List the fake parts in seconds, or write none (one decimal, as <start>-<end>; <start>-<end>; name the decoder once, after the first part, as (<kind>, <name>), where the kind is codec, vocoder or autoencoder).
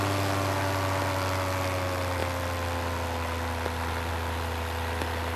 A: none